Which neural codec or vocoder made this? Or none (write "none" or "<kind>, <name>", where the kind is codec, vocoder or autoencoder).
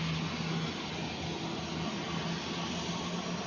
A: none